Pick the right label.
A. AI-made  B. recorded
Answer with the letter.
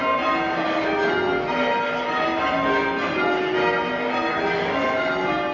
B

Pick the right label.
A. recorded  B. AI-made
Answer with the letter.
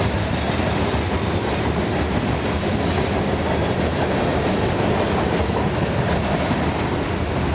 A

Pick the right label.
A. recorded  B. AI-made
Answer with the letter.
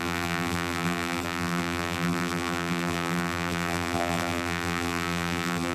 B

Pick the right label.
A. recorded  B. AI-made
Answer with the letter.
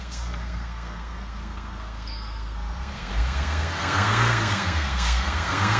B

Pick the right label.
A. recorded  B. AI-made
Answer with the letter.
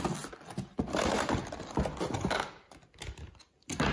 A